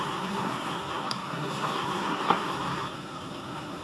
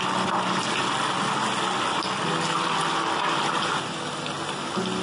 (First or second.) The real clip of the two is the second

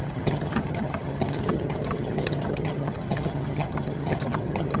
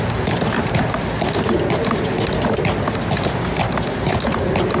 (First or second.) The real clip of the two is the second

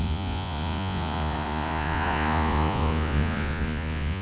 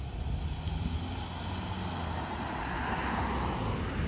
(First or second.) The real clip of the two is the second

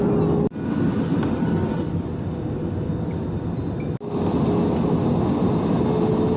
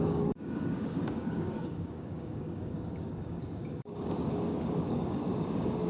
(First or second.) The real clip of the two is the first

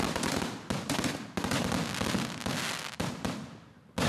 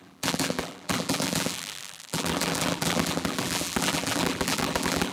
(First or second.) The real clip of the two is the first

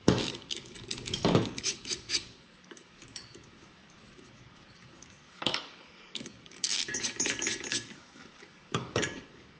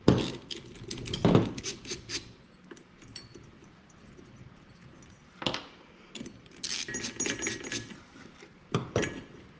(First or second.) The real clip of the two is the second